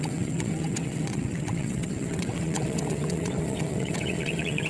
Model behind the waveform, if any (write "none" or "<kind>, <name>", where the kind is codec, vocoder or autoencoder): vocoder, WaveNeXt